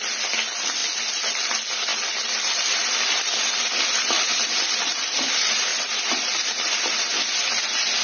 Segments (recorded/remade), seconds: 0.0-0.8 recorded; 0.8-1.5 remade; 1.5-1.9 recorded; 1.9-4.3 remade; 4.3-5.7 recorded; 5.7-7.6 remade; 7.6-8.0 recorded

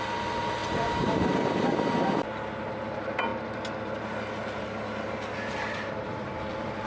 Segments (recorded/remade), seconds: 0.0-0.6 recorded; 0.6-1.6 remade; 1.6-6.9 recorded

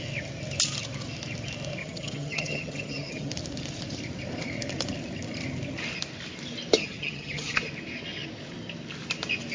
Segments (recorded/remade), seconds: 0.0-1.8 recorded; 1.8-3.3 remade; 3.3-6.8 recorded; 6.8-7.6 remade; 7.6-9.5 recorded